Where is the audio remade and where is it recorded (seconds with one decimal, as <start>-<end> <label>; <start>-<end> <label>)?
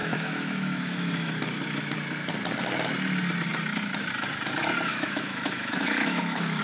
0.0-1.3 remade; 1.3-4.9 recorded; 4.9-6.6 remade